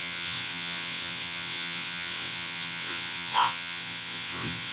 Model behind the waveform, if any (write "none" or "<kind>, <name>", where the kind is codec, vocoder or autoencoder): vocoder, WaveNeXt